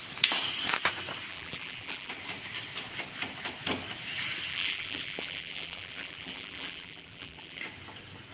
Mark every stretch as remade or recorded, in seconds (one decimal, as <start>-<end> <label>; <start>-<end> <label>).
0.0-1.3 recorded; 1.3-2.1 remade; 2.1-4.5 recorded; 4.5-7.6 remade; 7.6-8.3 recorded